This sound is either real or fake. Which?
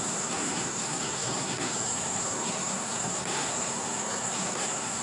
fake